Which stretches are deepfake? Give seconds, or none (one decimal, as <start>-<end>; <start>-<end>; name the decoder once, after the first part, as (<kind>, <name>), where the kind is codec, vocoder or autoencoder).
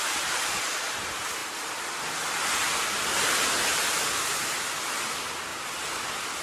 1.4-2.0 (vocoder, BigVGAN v2)